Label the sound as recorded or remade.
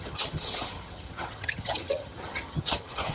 remade